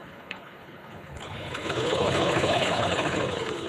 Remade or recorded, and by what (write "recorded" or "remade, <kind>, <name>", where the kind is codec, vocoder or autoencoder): remade, codec, HILCodec